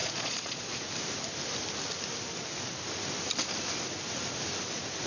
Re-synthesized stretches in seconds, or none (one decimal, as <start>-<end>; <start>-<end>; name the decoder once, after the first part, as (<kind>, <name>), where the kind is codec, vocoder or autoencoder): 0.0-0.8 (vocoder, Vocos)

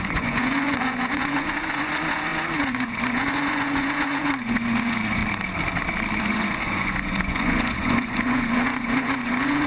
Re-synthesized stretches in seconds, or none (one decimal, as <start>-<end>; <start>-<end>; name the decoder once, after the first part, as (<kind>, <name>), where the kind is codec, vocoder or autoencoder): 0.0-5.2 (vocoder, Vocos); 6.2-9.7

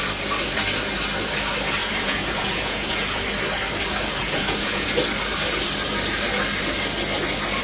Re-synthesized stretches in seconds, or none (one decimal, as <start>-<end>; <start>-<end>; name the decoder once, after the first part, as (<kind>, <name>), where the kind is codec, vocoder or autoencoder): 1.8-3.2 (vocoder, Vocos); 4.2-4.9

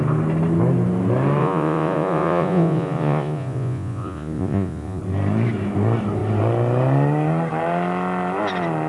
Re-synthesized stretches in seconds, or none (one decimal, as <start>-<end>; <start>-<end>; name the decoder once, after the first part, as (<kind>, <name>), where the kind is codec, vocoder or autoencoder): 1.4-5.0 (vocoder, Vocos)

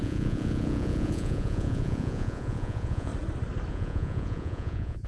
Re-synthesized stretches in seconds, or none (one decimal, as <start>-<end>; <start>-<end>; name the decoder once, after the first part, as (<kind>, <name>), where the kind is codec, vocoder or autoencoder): 0.0-3.1 (vocoder, Vocos); 3.7-5.1

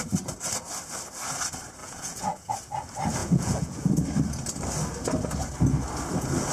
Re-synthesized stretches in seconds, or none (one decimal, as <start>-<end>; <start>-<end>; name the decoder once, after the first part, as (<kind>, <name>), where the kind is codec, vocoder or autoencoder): 1.8-2.5 (vocoder, Vocos); 3.2-3.9

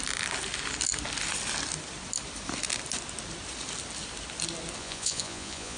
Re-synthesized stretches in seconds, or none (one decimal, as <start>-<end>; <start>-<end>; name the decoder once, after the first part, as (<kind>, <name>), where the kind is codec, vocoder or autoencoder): 4.8-5.8 (vocoder, Vocos)

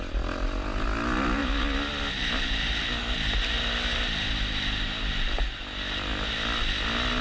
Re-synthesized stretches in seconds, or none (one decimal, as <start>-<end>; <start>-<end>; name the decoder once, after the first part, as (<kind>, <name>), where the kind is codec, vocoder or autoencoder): none